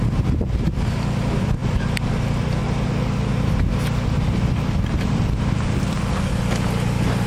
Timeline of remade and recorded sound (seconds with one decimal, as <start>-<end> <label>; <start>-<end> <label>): 0.0-1.6 recorded; 1.6-2.6 remade; 2.6-3.3 recorded; 3.3-6.3 remade; 6.3-7.3 recorded